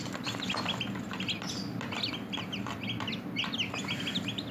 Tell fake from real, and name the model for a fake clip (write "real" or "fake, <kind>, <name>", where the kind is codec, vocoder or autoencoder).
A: real